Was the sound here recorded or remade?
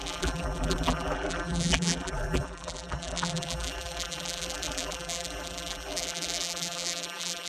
remade